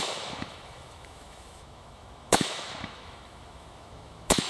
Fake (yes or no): yes